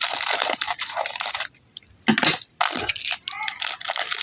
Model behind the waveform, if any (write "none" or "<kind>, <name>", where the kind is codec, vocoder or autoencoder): none